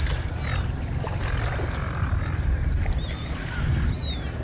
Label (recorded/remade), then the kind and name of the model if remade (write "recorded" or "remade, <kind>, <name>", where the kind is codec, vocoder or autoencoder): recorded